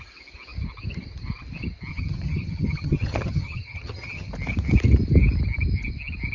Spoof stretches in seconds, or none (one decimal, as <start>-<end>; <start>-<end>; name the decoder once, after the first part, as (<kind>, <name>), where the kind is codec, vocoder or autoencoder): 1.9-4.3 (vocoder, HiFi-GAN)